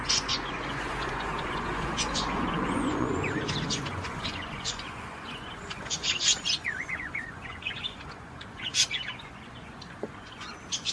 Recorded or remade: remade